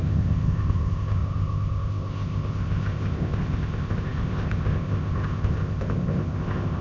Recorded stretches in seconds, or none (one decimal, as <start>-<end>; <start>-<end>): none